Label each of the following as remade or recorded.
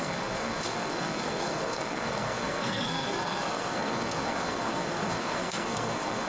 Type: remade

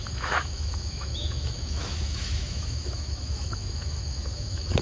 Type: remade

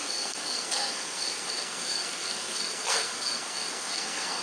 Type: remade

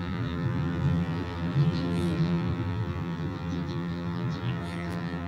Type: remade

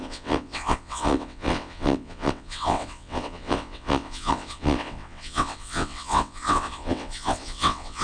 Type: remade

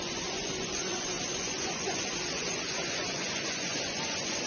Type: remade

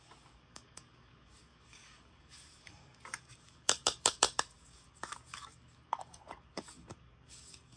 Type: remade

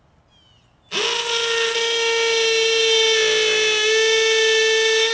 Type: recorded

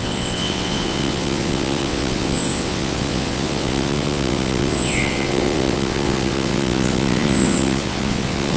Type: remade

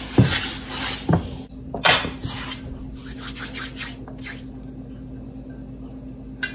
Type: recorded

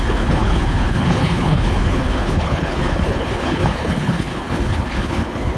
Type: remade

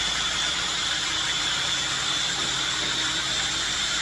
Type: remade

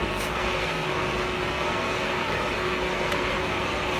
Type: remade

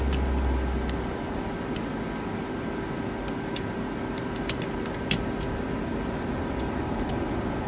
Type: recorded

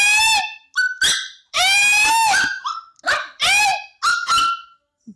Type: recorded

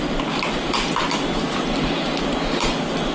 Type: recorded